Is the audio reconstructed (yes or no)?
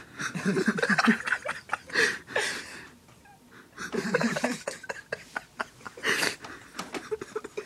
no